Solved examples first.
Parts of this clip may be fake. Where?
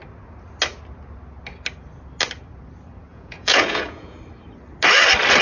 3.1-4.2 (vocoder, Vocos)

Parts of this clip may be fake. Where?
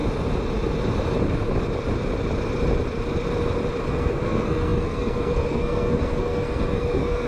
3.9-7.3 (codec, SNAC)